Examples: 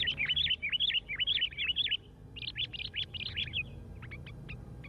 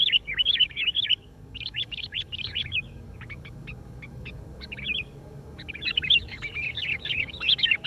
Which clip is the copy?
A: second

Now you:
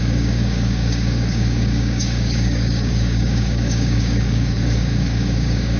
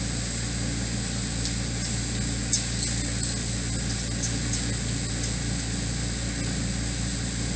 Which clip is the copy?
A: first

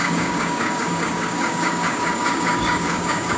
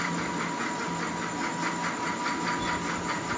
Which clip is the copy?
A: first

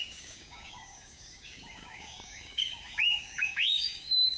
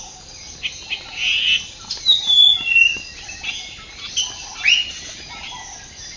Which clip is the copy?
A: first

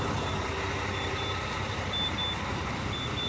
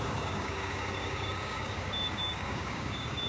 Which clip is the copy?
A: second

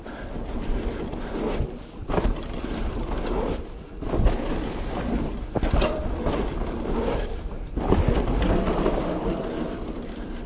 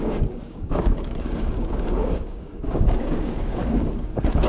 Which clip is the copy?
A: second